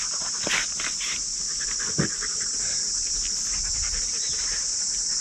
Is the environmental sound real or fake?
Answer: real